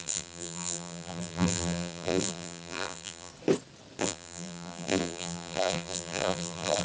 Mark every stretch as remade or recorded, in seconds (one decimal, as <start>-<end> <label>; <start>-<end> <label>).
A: 0.0-3.3 remade; 3.3-4.0 recorded; 4.0-6.8 remade